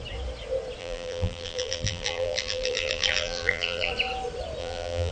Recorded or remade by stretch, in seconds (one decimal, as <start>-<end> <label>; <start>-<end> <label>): 0.0-0.8 recorded; 0.8-3.9 remade; 3.9-4.6 recorded; 4.6-5.1 remade